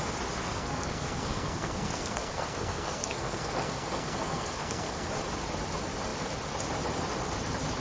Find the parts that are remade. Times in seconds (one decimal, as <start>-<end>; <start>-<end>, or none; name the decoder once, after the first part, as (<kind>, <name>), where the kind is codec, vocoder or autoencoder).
0.4-5.1 (codec, SNAC)